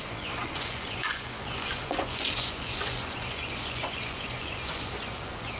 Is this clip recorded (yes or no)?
no